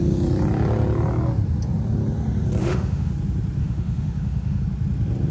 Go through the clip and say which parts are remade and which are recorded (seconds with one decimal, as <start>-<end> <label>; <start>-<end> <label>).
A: 0.0-2.6 recorded; 2.6-3.1 remade; 3.1-3.6 recorded; 3.6-4.6 remade; 4.6-5.3 recorded